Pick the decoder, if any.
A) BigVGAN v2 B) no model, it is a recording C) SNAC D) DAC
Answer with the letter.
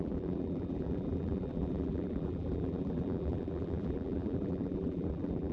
A